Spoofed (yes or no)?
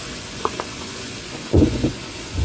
yes